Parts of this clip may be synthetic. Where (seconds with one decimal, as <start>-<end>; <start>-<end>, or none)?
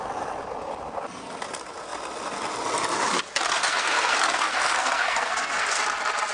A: 3.6-5.8